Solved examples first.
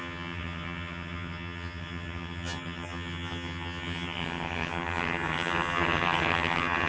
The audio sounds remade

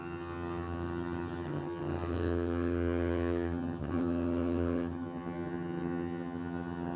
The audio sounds remade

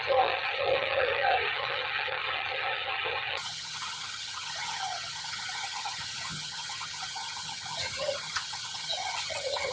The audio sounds remade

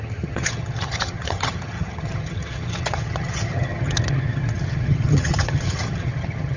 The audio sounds remade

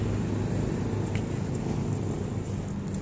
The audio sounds recorded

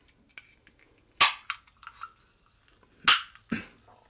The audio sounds recorded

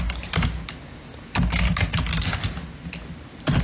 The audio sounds recorded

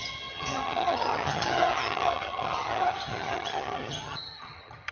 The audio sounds remade